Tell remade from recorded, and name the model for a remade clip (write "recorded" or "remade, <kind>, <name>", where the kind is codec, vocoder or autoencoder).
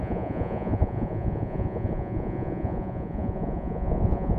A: remade, vocoder, Vocos